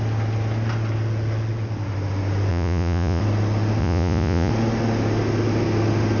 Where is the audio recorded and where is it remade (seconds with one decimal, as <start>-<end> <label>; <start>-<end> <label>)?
0.0-2.5 recorded; 2.5-3.2 remade; 3.2-3.8 recorded; 3.8-4.5 remade; 4.5-6.2 recorded